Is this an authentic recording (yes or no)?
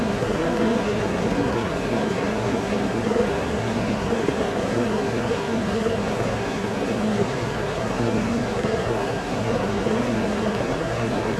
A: no